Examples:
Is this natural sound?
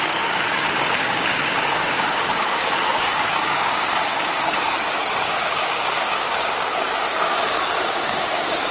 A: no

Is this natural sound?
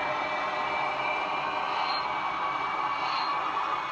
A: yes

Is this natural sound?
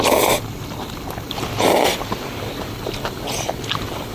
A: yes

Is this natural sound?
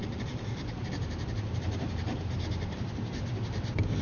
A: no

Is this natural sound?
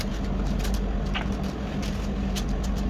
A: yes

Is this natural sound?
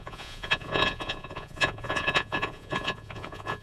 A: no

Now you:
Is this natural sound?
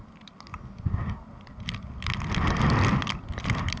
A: yes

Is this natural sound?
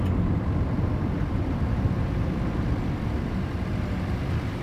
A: yes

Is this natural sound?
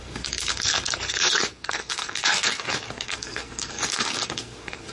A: no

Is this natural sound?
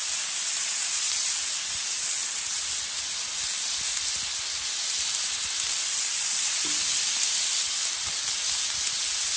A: yes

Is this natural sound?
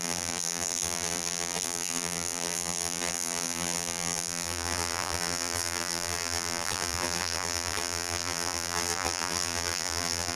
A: no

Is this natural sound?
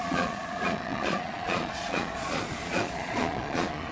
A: no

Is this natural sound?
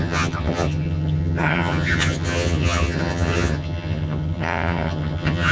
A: no